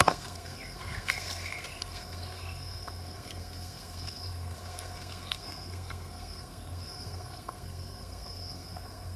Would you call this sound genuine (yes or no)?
no